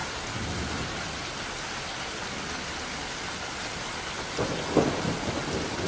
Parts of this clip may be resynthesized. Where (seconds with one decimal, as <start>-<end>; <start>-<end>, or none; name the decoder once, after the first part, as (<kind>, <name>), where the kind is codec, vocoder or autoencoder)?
none